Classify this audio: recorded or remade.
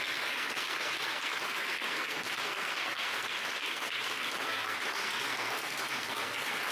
remade